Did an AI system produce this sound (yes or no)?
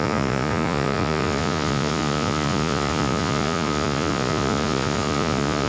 yes